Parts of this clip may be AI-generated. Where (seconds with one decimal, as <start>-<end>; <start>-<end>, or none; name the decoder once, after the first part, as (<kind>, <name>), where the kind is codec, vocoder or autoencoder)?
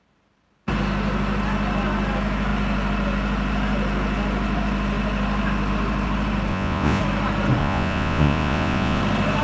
6.5-7.0 (vocoder, Vocos); 7.6-9.0